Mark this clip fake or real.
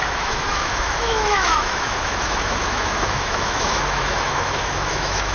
fake